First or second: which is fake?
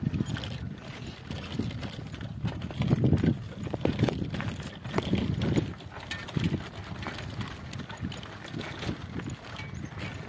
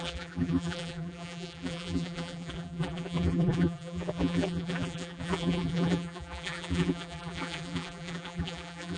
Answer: second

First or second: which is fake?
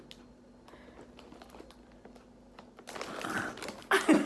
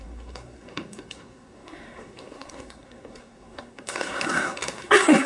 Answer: second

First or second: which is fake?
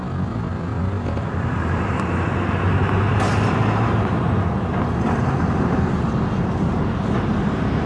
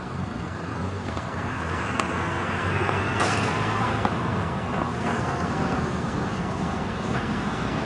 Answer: second